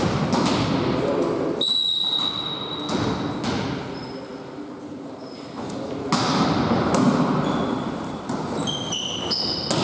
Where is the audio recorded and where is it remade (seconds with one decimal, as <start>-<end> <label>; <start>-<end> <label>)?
0.0-9.8 recorded